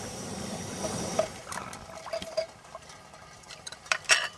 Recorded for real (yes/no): no